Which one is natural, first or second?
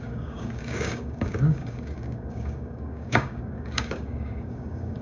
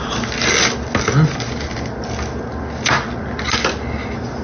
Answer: second